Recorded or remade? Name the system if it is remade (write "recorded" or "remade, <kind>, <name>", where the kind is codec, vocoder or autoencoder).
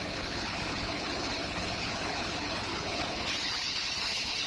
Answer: remade, codec, HILCodec